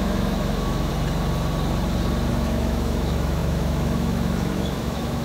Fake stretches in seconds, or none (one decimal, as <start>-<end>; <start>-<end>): 0.0-0.9; 2.3-5.2